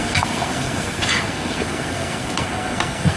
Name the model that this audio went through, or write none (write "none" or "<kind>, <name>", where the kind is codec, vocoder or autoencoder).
codec, SNAC